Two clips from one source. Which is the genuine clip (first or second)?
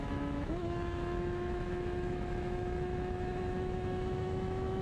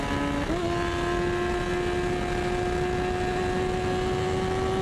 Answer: second